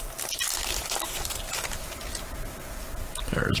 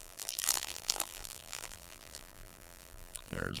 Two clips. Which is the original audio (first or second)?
first